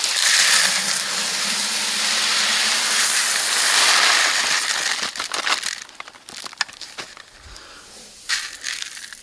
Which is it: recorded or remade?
recorded